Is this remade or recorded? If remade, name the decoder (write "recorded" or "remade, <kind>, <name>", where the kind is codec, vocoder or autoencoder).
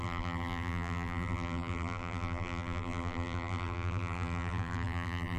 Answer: remade, vocoder, BigVGAN v2